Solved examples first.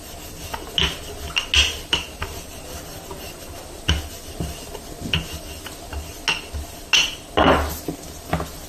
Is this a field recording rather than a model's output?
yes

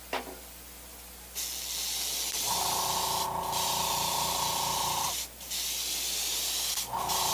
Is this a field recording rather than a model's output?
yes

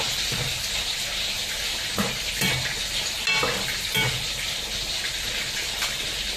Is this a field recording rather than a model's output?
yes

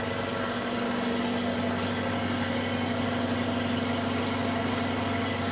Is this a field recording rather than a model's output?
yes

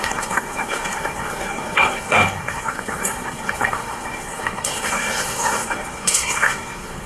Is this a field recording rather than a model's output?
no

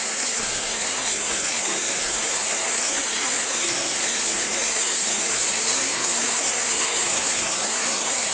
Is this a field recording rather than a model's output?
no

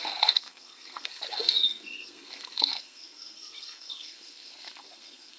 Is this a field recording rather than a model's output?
no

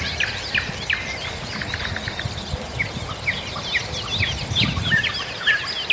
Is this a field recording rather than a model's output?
yes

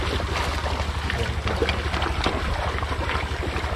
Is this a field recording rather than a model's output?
yes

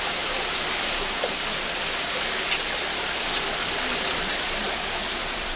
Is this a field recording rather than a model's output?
yes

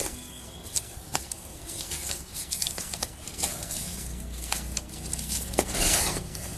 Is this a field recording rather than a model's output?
no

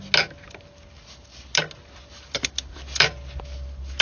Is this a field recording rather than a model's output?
yes